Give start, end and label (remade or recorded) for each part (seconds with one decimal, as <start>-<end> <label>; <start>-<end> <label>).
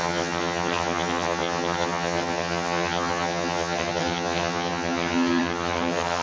0.0-6.2 remade